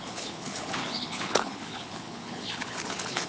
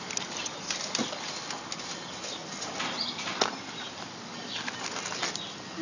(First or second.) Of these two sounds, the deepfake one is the first